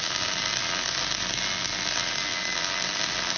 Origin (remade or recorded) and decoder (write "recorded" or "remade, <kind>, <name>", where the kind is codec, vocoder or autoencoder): recorded